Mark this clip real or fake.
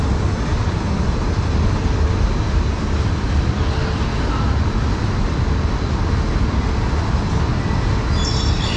real